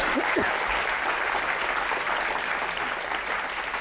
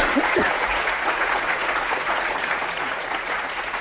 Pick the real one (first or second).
first